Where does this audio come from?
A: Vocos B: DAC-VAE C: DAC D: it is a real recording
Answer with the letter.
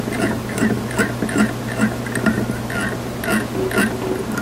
D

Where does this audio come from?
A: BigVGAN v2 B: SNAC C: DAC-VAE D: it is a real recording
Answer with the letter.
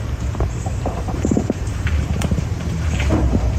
A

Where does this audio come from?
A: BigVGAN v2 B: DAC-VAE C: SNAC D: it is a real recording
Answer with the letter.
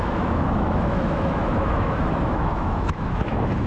B